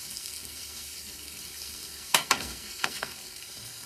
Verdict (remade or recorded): remade